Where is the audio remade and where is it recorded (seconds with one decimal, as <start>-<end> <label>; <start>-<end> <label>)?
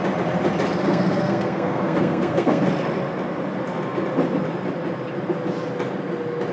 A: 0.0-0.8 recorded; 0.8-2.6 remade; 2.6-6.5 recorded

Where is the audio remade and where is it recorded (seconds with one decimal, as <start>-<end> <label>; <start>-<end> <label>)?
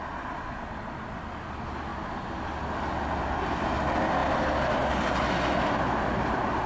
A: 0.0-6.7 recorded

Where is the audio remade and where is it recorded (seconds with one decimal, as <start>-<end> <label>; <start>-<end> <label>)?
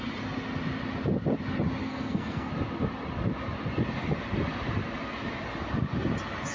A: 0.0-1.8 recorded; 1.8-2.5 remade; 2.5-6.5 recorded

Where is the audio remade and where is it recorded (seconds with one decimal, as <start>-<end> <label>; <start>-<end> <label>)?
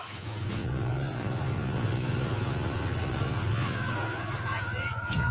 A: 0.0-5.3 remade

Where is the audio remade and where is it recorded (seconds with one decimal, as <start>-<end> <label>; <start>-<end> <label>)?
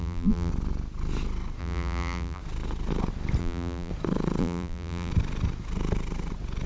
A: 0.0-0.5 remade; 0.5-1.6 recorded; 1.6-2.4 remade; 2.4-3.4 recorded; 3.4-3.9 remade; 3.9-4.4 recorded; 4.4-5.1 remade; 5.1-6.7 recorded